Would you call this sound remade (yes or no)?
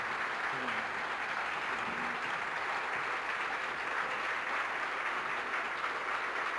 no